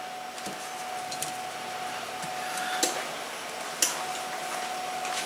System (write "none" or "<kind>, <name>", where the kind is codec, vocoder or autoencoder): none